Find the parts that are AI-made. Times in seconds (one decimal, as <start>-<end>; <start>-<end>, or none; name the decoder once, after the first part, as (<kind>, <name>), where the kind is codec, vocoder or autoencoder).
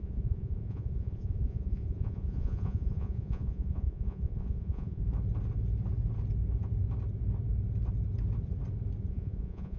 0.0-5.0 (vocoder, Vocos); 9.1-9.8